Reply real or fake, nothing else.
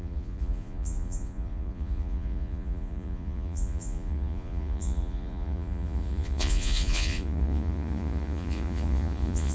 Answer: fake